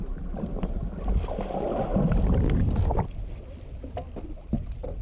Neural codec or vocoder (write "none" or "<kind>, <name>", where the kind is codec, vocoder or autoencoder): none